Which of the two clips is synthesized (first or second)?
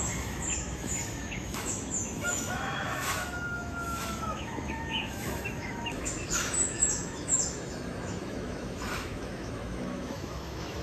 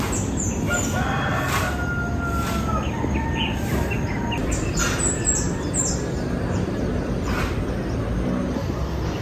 first